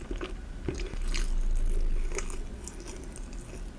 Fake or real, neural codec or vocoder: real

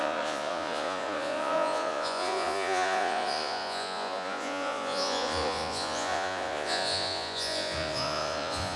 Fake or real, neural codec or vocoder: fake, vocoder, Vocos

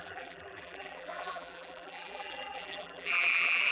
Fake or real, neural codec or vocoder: fake, vocoder, BigVGAN v2